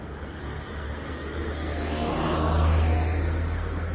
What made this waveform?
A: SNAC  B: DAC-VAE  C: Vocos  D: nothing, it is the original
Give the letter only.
A